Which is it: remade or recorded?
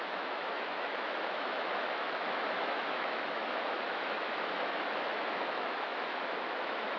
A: remade